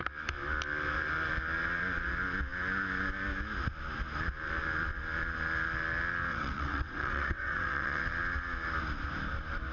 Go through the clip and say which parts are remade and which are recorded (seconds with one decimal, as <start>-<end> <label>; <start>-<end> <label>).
0.0-6.3 recorded; 6.3-8.0 remade; 8.0-9.7 recorded